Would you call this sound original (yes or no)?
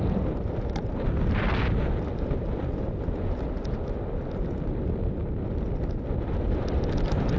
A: yes